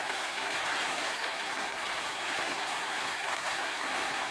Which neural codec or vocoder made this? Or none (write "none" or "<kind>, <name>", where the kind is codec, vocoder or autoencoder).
codec, SNAC